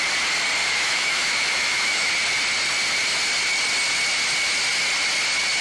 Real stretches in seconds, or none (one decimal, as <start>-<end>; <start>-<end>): 0.0-0.6; 2.1-5.6